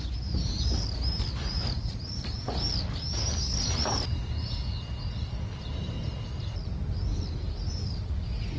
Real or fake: real